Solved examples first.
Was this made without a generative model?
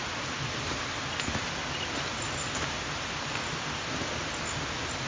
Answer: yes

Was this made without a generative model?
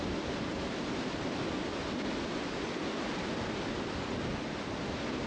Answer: yes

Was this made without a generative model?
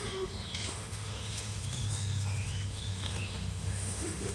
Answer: no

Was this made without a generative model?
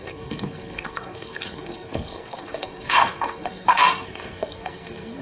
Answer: no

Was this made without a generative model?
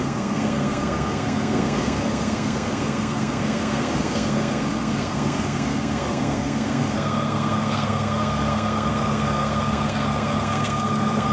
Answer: no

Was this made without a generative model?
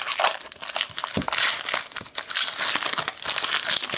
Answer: yes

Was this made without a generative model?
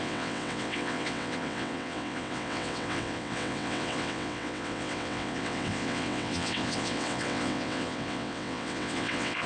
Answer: no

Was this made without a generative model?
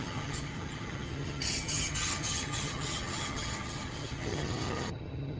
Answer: no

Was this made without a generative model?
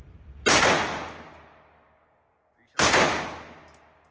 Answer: yes